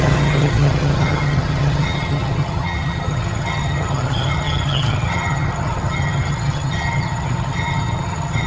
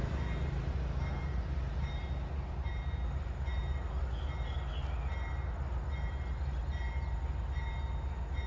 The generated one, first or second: first